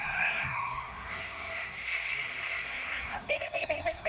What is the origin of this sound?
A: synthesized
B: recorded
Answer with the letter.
A